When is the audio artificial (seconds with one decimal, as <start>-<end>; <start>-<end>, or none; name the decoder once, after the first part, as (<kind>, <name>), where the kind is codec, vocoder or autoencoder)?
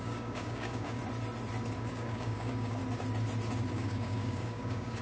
0.0-1.0 (codec, DAC); 1.8-2.8; 3.7-5.0